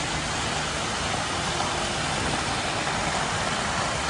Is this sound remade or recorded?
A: recorded